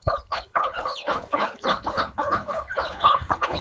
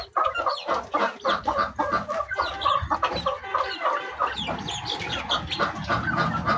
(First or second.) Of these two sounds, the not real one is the first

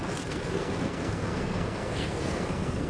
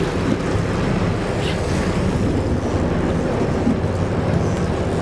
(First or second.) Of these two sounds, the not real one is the first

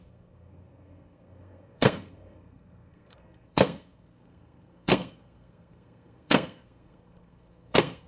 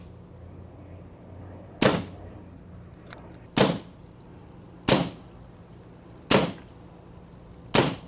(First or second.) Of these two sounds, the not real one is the first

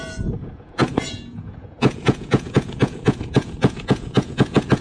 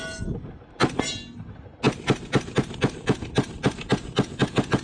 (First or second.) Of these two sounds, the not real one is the first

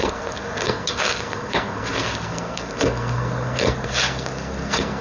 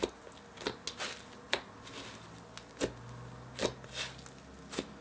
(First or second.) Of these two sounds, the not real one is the first